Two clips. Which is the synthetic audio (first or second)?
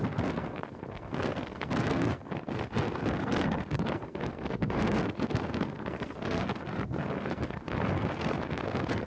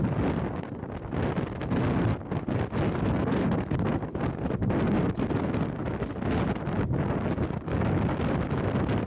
first